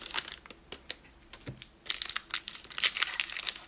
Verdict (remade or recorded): recorded